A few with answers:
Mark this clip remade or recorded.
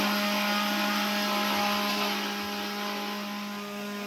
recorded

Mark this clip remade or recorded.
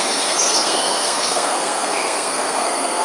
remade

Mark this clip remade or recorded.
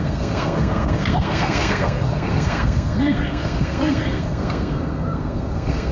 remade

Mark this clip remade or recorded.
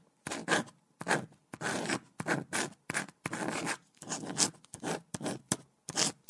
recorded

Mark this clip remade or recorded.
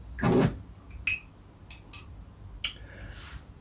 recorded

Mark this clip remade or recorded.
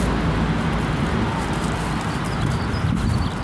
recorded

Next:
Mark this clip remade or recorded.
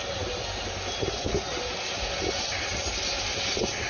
recorded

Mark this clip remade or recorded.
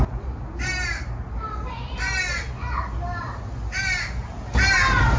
recorded